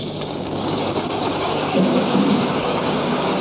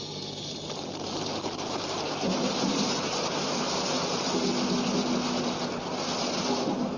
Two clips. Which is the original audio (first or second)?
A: second